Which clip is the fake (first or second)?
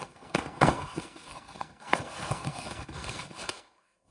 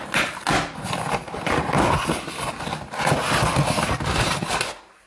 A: first